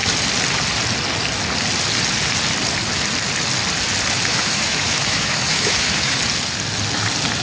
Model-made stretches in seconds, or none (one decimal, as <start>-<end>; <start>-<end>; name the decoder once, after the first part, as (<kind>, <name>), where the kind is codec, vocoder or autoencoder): 4.3-6.2 (autoencoder, DAC-VAE)